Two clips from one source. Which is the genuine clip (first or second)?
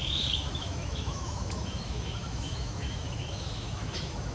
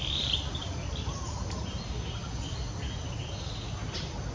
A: second